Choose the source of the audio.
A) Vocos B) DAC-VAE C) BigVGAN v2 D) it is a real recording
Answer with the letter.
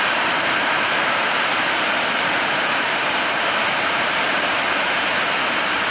C